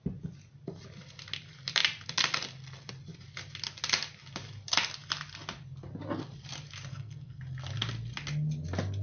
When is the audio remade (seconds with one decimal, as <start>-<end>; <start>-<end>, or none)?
6.9-7.4